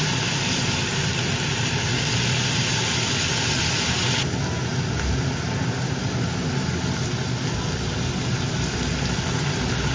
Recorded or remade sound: recorded